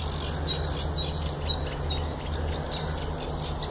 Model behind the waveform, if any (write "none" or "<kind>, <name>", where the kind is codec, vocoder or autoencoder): none